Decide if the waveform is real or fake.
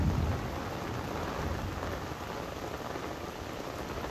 real